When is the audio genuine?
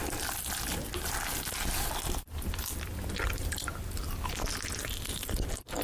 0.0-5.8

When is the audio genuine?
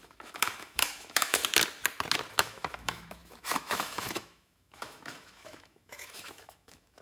1.4-2.3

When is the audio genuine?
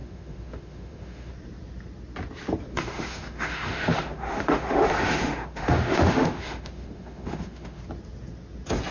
1.3-2.7; 7.8-8.9